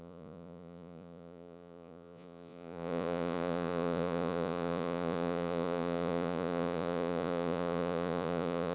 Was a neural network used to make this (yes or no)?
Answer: yes